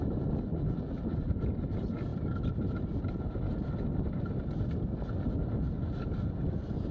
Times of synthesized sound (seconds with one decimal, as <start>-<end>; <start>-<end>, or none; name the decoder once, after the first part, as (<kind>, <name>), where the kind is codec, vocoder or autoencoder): 0.5-1.3 (vocoder, BigVGAN v2)